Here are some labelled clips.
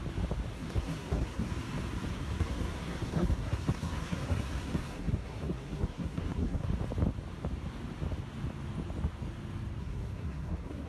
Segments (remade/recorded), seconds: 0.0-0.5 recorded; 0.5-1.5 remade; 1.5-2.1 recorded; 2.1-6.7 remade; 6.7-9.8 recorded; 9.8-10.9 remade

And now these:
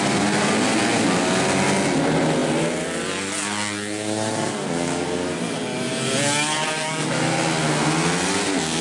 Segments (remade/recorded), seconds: 0.0-8.8 recorded

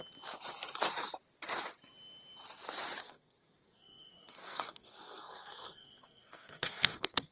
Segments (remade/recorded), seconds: 0.0-3.0 recorded; 3.0-7.3 remade

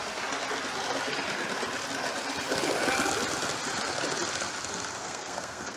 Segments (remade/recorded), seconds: 0.0-5.0 recorded; 5.0-5.8 remade

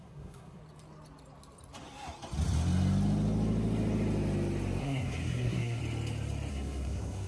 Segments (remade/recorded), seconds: 0.0-0.6 remade; 0.6-4.8 recorded; 4.8-5.8 remade; 5.8-6.5 recorded; 6.5-7.3 remade

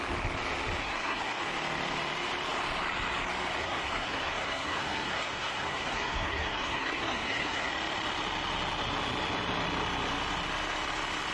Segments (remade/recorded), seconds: 0.0-0.8 recorded; 0.8-1.4 remade; 1.4-3.6 recorded; 3.6-7.7 remade; 7.7-11.3 recorded